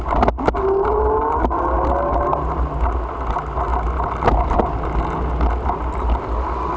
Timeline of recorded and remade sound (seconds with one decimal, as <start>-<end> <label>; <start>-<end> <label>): 0.0-6.8 recorded